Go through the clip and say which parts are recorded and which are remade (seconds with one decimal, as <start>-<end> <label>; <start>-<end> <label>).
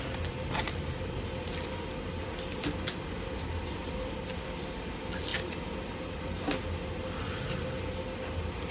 0.0-3.8 recorded; 3.8-4.3 remade; 4.3-5.3 recorded; 5.3-6.4 remade; 6.4-8.7 recorded